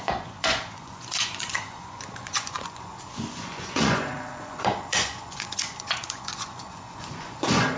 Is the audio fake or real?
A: fake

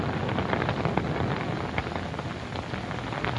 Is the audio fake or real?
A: real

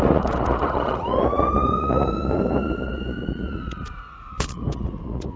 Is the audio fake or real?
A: fake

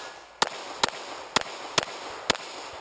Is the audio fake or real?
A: real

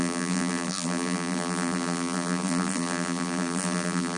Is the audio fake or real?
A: fake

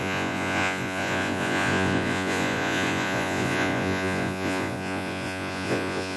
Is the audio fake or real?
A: fake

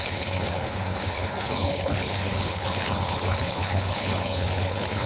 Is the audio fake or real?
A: fake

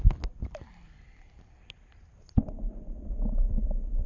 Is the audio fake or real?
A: real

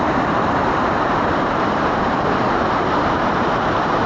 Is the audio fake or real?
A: fake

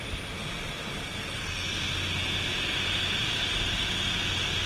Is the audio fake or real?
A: real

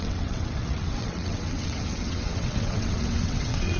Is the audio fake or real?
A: fake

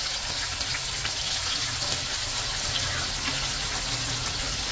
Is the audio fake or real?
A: real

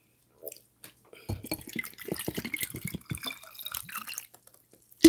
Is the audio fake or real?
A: real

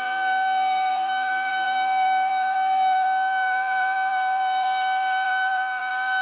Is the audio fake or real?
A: fake